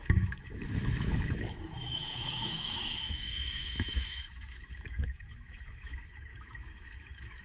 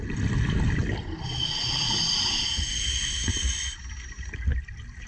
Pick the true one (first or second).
second